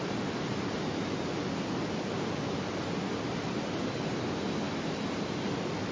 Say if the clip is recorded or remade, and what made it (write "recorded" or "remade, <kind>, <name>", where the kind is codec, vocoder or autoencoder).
recorded